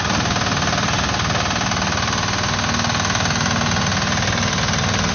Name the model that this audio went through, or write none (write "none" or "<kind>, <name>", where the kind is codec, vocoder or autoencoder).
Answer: none